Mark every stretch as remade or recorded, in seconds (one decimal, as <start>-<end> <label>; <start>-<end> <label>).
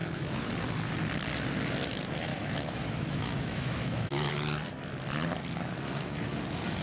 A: 0.0-0.5 remade; 0.5-2.3 recorded; 2.3-4.3 remade; 4.3-6.8 recorded